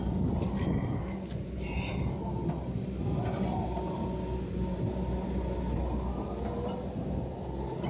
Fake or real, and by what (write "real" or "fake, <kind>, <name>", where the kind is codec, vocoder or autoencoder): real